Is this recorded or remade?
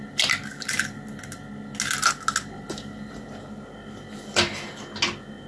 recorded